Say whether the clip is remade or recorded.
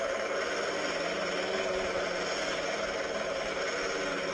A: recorded